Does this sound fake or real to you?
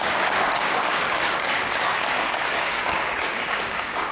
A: fake